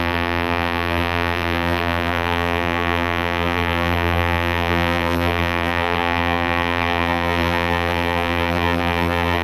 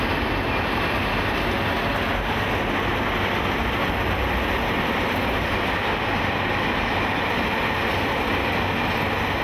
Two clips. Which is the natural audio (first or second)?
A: second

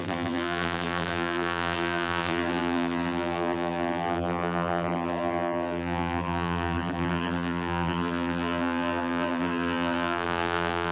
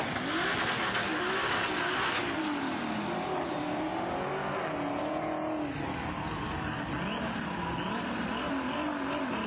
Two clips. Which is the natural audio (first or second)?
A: second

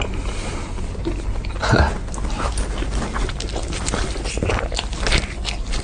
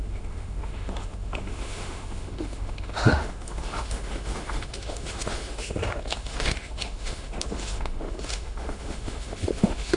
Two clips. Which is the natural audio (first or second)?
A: first